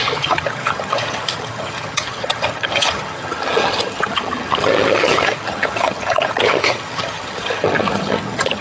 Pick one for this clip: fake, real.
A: fake